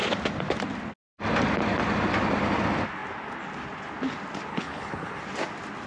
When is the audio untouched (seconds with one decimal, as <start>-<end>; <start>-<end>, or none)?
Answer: 0.0-4.5; 5.2-5.9